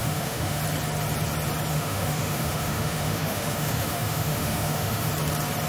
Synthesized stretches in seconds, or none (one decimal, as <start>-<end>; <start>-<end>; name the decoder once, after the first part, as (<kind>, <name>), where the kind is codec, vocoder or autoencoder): 0.0-0.6 (autoencoder, DAC-VAE); 1.7-5.1